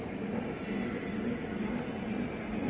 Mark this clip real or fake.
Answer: real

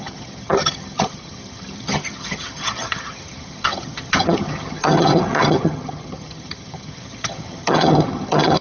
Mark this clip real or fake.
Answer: fake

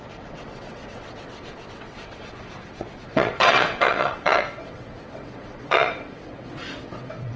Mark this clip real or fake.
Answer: fake